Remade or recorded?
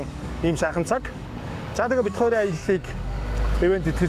remade